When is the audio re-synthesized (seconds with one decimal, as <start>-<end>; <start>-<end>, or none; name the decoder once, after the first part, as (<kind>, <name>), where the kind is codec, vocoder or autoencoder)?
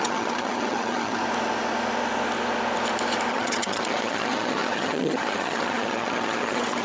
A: 0.0-1.2 (vocoder, HiFi-GAN); 3.3-6.8